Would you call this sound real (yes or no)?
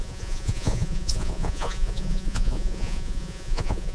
no